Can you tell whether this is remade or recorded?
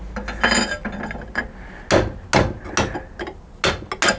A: recorded